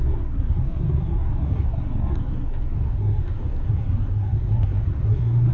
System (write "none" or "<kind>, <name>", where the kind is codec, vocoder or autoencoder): codec, SNAC